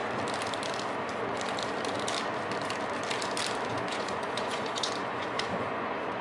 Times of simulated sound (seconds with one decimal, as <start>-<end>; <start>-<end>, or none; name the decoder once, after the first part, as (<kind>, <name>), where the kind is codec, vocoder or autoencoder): 3.7-6.2 (vocoder, Vocos)